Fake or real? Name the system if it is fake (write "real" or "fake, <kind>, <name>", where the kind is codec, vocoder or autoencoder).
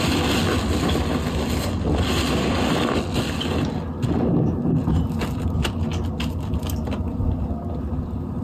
real